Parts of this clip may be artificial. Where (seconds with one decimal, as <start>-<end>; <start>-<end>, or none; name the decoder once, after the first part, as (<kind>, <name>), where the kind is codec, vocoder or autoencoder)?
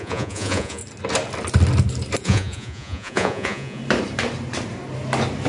0.0-0.8 (vocoder, Vocos); 2.2-3.8